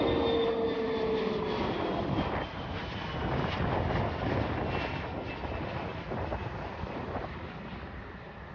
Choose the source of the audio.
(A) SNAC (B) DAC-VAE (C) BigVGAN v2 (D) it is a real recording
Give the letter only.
D